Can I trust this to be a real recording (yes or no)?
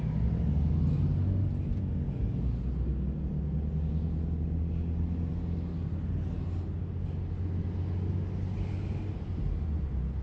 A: yes